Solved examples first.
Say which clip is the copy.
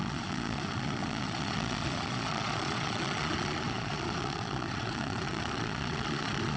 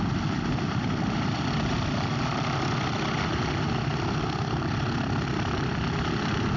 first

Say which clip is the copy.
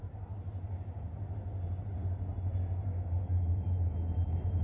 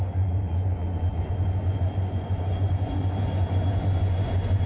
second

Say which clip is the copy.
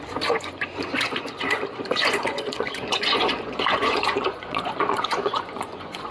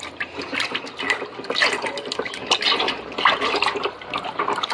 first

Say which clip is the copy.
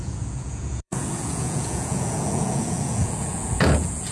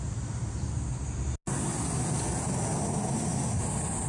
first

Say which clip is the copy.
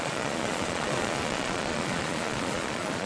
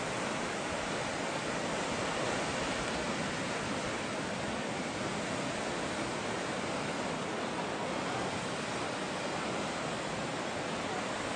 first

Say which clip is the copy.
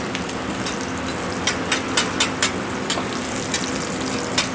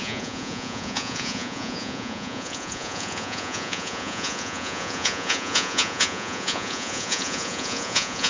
second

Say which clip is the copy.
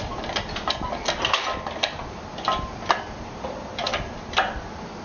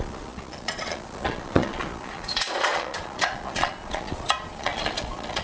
second